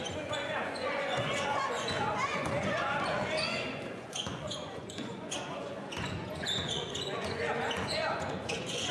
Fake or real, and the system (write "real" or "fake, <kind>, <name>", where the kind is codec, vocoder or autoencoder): fake, vocoder, Vocos